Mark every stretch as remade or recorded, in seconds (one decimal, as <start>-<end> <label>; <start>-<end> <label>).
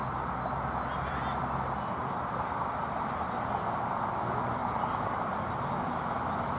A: 0.0-3.8 recorded; 3.8-4.6 remade; 4.6-5.8 recorded; 5.8-6.6 remade